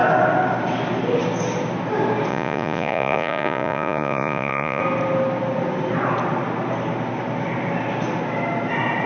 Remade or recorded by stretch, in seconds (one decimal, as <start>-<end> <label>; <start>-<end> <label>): 0.0-2.3 recorded; 2.3-4.8 remade; 4.8-9.1 recorded